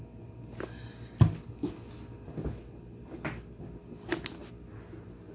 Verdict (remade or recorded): recorded